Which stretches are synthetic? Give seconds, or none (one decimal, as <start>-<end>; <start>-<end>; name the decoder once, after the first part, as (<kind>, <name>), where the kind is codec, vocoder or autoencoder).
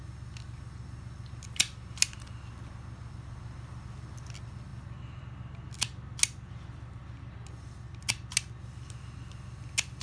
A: none